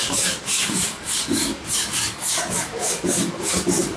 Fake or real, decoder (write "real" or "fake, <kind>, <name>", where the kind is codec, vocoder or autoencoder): fake, codec, DAC